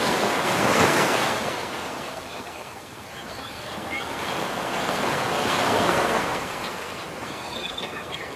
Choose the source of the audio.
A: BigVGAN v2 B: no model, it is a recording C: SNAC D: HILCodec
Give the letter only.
C